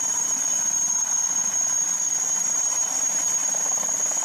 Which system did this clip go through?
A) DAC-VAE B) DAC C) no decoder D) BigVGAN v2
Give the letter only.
C